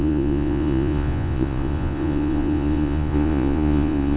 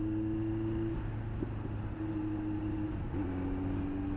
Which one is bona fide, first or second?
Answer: second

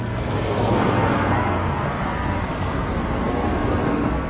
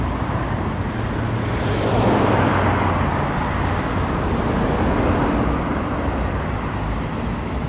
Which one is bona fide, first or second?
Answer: second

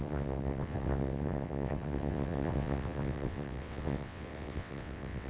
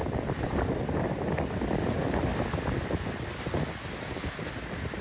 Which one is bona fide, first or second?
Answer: second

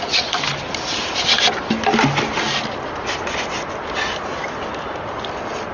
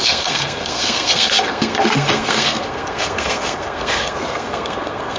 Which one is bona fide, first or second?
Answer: first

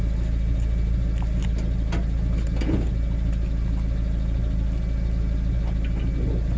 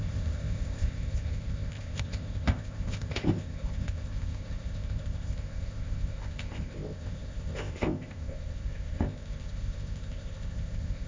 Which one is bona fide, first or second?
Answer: first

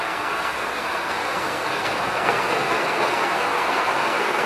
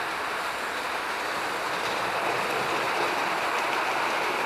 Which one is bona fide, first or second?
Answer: second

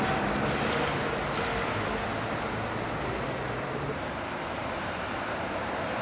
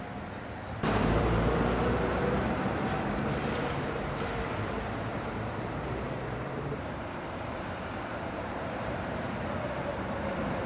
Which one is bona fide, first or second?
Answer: first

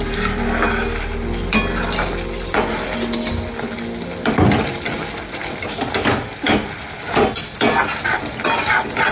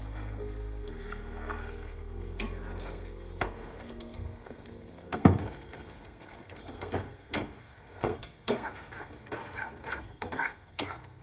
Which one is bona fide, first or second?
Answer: first